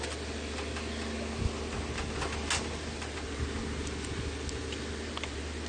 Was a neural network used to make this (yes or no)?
no